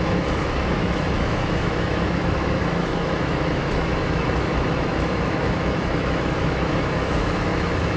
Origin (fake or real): fake